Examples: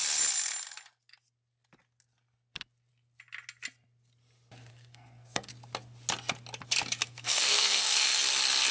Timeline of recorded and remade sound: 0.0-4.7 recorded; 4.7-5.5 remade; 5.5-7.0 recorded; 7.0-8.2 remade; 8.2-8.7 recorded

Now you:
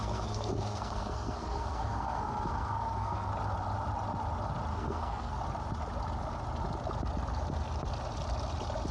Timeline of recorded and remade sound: 0.0-3.3 remade; 3.3-4.7 recorded; 4.7-5.4 remade; 5.4-8.9 recorded

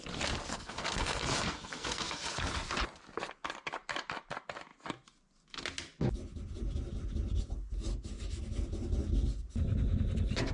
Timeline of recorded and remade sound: 0.0-0.5 recorded; 0.5-2.5 remade; 2.5-10.5 recorded

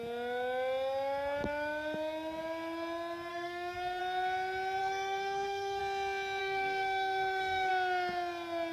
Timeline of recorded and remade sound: 0.0-3.3 recorded; 3.3-4.0 remade; 4.0-4.8 recorded; 4.8-5.8 remade; 5.8-6.4 recorded; 6.4-7.7 remade; 7.7-8.7 recorded

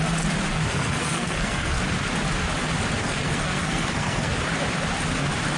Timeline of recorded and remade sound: 0.0-0.5 recorded; 0.5-1.8 remade; 1.8-3.0 recorded; 3.0-4.3 remade; 4.3-5.6 recorded

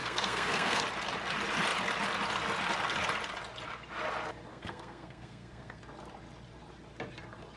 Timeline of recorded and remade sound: 0.0-0.8 remade; 0.8-4.5 recorded; 4.5-5.8 remade; 5.8-7.6 recorded